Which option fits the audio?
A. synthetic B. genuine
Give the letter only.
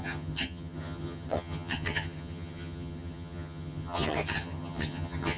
A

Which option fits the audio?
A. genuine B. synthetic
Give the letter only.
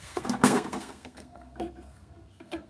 B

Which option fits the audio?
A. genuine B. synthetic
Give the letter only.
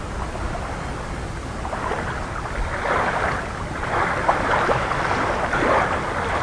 A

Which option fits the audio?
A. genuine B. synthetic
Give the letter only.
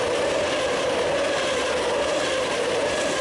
A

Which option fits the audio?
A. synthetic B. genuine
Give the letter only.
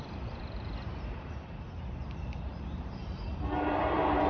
A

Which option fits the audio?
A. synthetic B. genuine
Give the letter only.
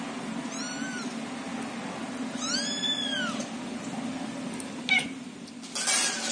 B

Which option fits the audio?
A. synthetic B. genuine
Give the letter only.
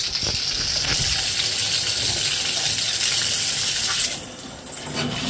B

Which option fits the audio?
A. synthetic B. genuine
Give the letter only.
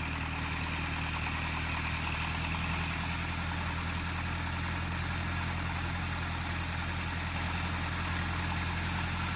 B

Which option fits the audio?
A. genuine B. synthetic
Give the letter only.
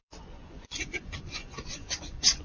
B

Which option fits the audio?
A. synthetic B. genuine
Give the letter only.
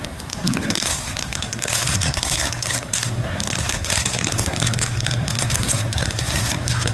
A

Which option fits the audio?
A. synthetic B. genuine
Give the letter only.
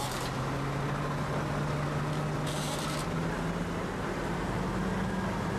B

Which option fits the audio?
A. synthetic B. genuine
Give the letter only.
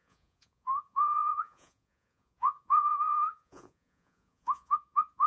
A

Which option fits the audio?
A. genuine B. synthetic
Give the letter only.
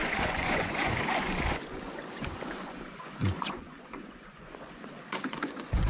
B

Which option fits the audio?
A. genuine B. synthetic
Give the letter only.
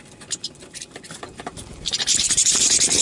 B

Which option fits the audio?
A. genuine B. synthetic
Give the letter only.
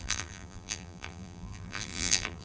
B